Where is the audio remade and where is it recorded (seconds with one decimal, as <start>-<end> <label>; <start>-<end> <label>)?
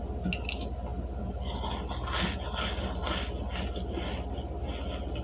0.0-5.2 recorded